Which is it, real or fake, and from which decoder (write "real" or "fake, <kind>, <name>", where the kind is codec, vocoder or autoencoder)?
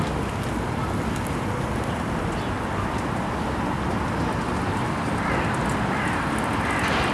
real